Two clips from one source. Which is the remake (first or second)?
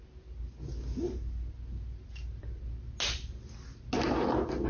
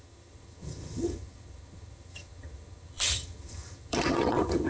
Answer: second